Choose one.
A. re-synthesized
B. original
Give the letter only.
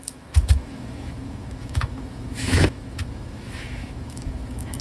A